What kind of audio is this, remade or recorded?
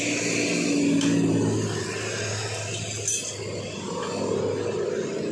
recorded